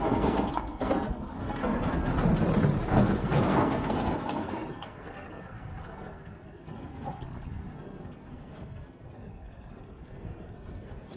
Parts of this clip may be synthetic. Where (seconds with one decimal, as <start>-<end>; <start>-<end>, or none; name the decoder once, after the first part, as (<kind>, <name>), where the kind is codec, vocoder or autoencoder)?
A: 0.0-2.1 (codec, SNAC); 2.8-11.2